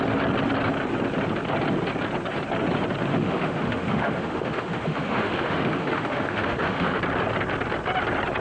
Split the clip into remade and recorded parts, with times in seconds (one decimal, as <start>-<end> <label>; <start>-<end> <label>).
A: 0.0-3.1 recorded; 3.1-7.0 remade; 7.0-8.4 recorded